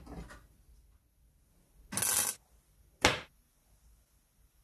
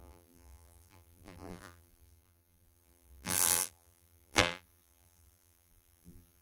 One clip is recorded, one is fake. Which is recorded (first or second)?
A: first